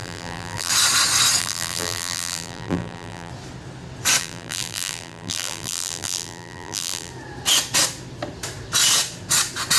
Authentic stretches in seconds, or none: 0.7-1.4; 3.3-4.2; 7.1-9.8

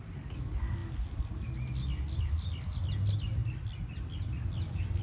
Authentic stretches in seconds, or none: 0.0-5.0

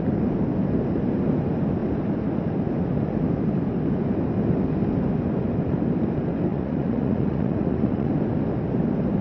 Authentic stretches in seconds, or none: 0.0-6.5; 8.1-9.2

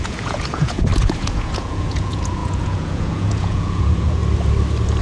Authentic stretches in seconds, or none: 4.2-5.0